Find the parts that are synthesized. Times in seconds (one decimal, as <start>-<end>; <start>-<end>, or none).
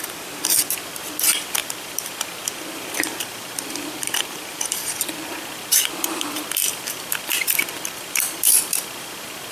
0.0-9.5